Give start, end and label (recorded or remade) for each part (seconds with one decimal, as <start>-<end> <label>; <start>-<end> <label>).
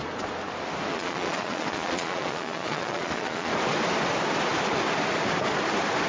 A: 0.0-0.9 recorded; 0.9-3.5 remade; 3.5-6.1 recorded